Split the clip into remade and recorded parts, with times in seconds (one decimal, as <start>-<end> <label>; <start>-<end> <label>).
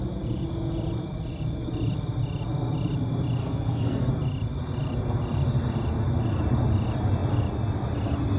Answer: 0.0-3.4 recorded; 3.4-4.1 remade; 4.1-8.4 recorded